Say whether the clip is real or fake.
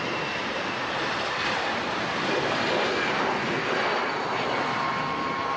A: real